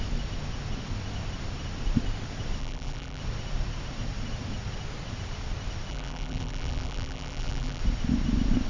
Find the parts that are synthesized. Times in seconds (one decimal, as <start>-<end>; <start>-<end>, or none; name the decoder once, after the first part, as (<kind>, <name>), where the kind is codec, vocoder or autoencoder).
2.6-3.2 (vocoder, BigVGAN v2); 5.9-7.8